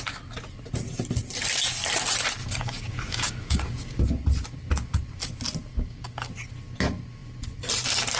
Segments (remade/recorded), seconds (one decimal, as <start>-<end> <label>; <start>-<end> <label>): 0.0-2.4 recorded; 2.4-4.0 remade; 4.0-5.7 recorded; 5.7-6.3 remade; 6.3-8.2 recorded